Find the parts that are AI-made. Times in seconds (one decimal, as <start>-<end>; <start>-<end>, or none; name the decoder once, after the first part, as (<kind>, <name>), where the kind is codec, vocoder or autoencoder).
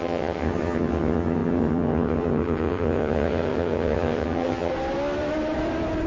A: 0.0-4.7 (vocoder, HiFi-GAN)